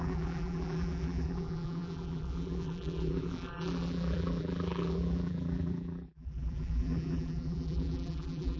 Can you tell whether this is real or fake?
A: fake